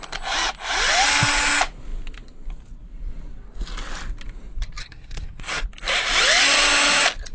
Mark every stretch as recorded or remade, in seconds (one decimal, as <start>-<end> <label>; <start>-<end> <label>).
0.0-4.8 recorded; 4.8-5.6 remade; 5.6-7.3 recorded